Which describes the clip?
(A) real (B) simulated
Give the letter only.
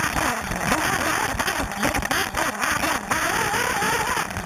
A